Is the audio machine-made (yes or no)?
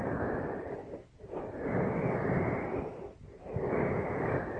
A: no